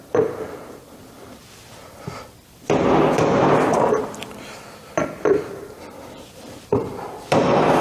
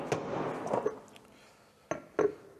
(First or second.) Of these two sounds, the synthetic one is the first